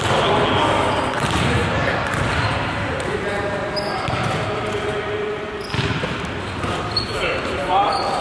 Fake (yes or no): no